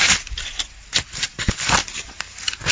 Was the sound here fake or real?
real